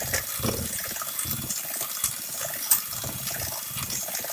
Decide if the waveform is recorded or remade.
recorded